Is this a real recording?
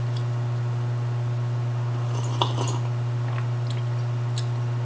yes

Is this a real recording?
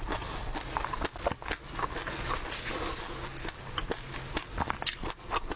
yes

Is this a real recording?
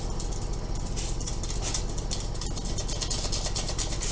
yes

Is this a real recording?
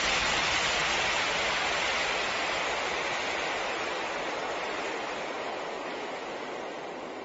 yes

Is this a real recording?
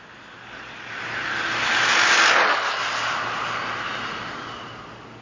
yes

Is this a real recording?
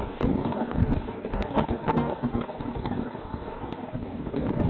no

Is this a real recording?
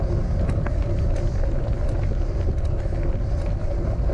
yes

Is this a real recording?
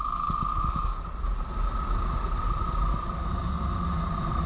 yes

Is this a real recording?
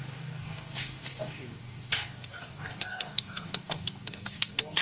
no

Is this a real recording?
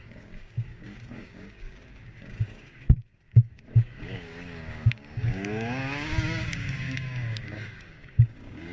no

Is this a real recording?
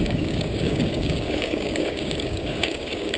no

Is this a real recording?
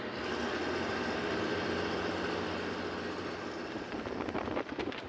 yes